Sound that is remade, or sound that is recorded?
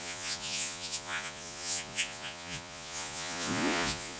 remade